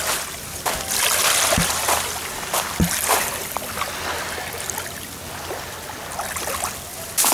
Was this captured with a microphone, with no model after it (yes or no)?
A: yes